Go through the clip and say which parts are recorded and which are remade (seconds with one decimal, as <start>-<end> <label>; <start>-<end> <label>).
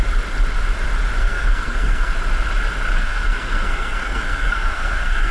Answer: 0.0-1.2 recorded; 1.2-2.1 remade; 2.1-3.0 recorded; 3.0-5.3 remade